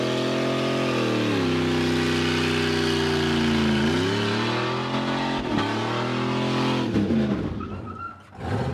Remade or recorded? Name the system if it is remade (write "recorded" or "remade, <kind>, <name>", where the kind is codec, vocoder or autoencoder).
recorded